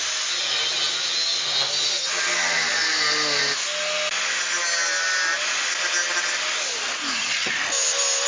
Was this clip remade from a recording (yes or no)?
no